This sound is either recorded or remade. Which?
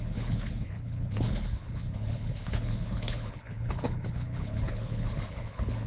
remade